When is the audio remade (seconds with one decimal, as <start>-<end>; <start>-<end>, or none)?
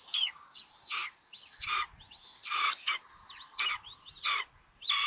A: none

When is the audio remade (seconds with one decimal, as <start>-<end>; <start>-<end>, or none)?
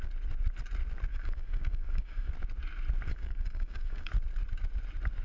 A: 1.1-2.3; 3.1-4.1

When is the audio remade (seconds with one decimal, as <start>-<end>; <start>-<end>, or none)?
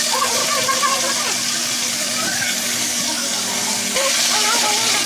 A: 0.0-0.4; 1.9-3.8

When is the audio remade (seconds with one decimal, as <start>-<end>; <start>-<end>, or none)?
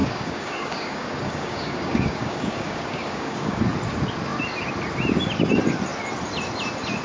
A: 0.0-3.6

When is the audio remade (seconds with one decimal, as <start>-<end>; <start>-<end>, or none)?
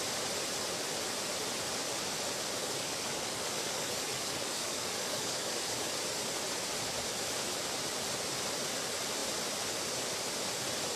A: 2.6-5.9